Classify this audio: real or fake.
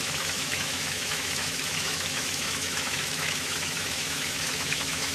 fake